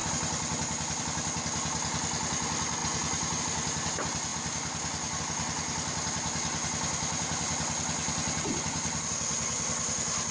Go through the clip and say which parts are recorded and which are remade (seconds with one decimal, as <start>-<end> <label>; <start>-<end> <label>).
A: 0.0-10.3 recorded